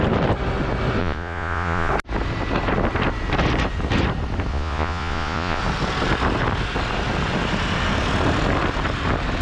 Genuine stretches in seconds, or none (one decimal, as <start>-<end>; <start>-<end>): 0.0-1.0; 1.9-4.5; 5.6-9.4